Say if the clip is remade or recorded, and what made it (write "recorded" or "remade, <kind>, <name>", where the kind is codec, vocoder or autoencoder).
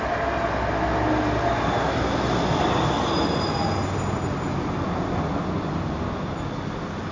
recorded